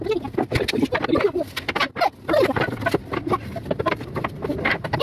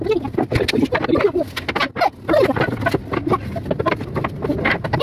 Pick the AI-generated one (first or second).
first